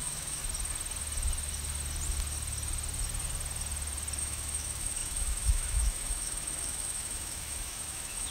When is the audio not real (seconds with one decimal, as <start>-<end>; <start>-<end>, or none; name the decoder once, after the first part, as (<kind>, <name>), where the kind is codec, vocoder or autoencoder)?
0.0-0.4 (autoencoder, DAC-VAE); 4.2-8.3